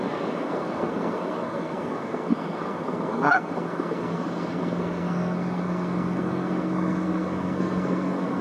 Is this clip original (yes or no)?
no